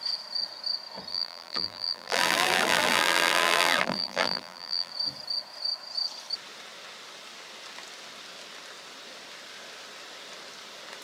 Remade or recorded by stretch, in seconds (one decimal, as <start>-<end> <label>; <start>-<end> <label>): 0.0-1.1 recorded; 1.1-4.9 remade; 4.9-11.0 recorded

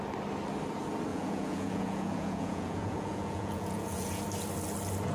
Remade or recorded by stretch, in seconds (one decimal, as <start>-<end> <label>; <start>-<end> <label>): 0.0-1.1 recorded; 1.1-4.2 remade; 4.2-5.1 recorded

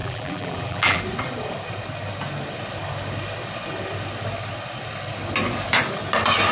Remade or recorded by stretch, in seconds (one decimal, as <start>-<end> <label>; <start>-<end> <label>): 0.0-1.0 remade; 1.0-6.5 recorded

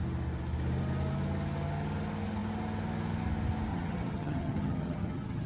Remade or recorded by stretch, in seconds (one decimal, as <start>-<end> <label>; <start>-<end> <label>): 0.0-3.7 recorded; 3.7-5.5 remade

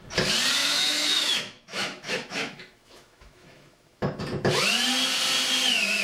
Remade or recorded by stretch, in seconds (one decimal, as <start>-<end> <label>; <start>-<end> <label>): 0.0-0.6 recorded; 0.6-4.2 remade; 4.2-6.0 recorded

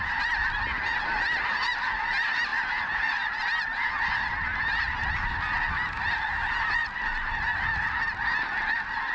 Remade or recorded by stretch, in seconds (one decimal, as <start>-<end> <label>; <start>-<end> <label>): 0.0-9.1 recorded

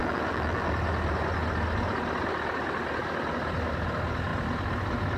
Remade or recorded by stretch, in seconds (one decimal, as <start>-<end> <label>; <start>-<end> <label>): 0.0-0.7 remade; 0.7-5.2 recorded

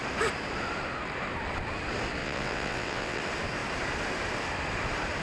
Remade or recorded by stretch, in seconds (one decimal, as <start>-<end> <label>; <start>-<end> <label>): 0.0-2.2 recorded; 2.2-3.2 remade; 3.2-5.2 recorded